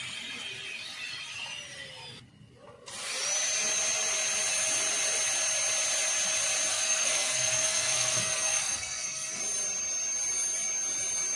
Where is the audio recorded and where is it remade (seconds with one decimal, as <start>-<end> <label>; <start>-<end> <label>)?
0.0-6.7 recorded; 6.7-9.4 remade; 9.4-11.4 recorded